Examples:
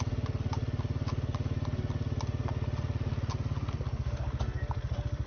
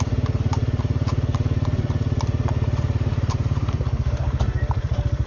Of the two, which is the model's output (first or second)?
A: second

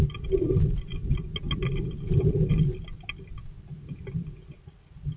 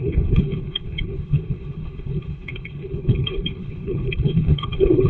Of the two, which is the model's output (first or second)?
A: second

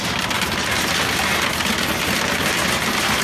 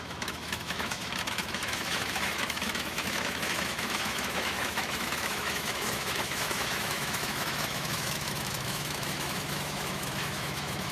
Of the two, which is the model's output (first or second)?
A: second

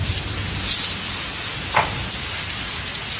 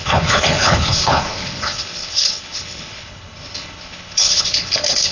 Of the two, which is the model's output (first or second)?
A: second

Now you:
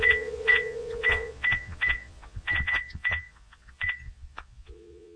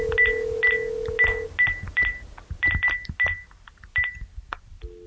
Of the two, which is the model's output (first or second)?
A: first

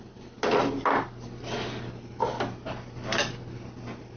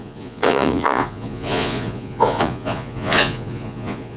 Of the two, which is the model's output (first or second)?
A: second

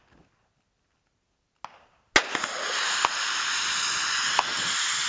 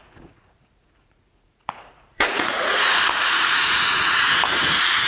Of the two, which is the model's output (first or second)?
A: second